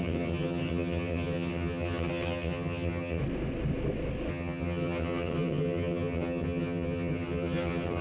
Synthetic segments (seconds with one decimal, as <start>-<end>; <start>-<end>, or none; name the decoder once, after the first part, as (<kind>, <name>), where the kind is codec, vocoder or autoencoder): 0.0-3.2 (vocoder, HiFi-GAN); 4.3-8.0